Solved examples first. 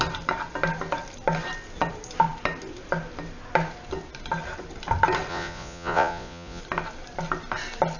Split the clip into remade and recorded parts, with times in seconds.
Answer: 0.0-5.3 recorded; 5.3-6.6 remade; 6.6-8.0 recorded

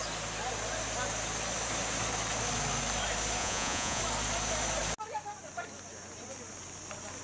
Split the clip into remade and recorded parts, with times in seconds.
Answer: 0.0-3.4 recorded; 3.4-4.0 remade; 4.0-7.2 recorded

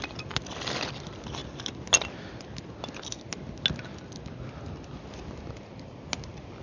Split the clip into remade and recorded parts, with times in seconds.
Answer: 0.0-6.6 recorded

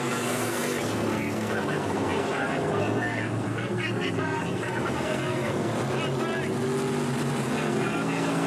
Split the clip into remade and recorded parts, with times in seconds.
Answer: 0.0-5.7 remade; 5.7-7.4 recorded; 7.4-8.5 remade